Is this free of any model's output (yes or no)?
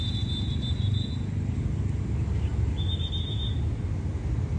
yes